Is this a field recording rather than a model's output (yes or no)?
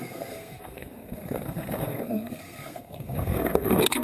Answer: no